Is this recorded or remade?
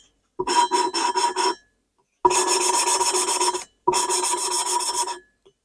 recorded